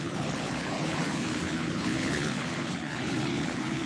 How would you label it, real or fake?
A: fake